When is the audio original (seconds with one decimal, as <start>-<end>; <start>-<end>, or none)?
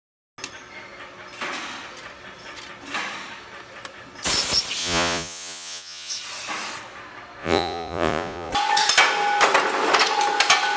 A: 0.0-4.8; 6.1-7.4; 8.5-10.8